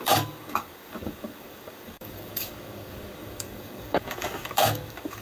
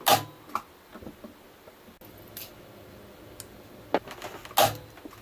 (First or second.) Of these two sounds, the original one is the second